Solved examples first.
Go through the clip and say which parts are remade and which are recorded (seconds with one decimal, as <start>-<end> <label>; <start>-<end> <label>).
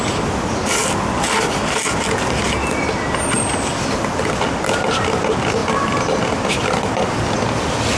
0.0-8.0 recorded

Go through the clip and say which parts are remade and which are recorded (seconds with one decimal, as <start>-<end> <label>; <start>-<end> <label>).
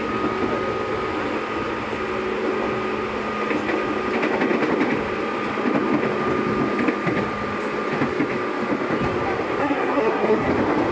0.0-9.6 recorded; 9.6-10.5 remade; 10.5-10.9 recorded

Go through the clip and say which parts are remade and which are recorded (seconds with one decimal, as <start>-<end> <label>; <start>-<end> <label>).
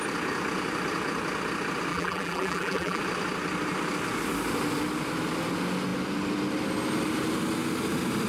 0.0-1.9 recorded; 1.9-3.0 remade; 3.0-8.3 recorded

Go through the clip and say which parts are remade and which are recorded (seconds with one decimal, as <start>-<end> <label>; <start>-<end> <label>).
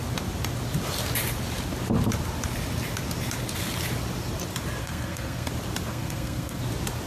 0.0-4.8 recorded; 4.8-5.5 remade; 5.5-5.9 recorded; 5.9-6.6 remade; 6.6-7.1 recorded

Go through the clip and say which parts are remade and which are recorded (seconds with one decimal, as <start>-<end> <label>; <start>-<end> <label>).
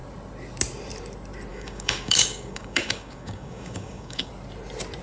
0.0-1.5 recorded; 1.5-4.3 remade; 4.3-5.0 recorded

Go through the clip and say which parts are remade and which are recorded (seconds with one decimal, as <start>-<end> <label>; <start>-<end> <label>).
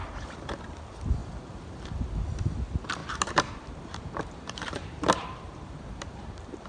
0.0-0.6 remade; 0.6-1.2 recorded; 1.2-2.1 remade; 2.1-3.0 recorded; 3.0-6.7 remade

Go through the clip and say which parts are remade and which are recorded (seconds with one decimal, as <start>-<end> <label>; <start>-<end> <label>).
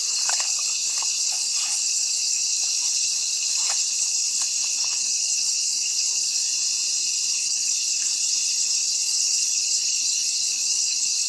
0.0-6.5 remade; 6.5-7.3 recorded; 7.3-11.3 remade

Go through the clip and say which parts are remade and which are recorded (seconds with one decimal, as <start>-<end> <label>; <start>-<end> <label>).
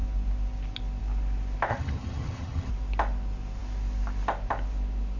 0.0-1.7 recorded; 1.7-2.7 remade; 2.7-5.2 recorded